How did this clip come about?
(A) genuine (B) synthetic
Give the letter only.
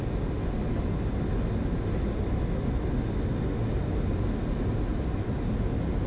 A